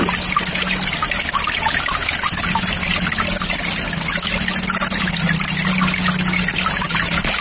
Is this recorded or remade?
recorded